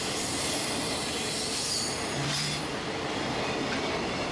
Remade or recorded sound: recorded